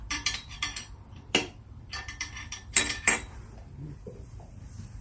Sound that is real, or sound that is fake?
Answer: fake